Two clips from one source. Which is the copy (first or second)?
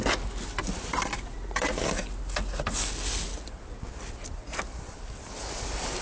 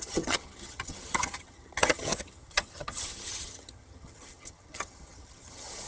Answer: second